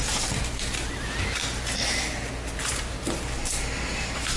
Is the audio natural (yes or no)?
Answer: yes